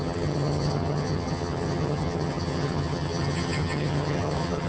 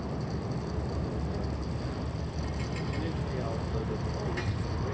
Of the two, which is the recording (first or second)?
second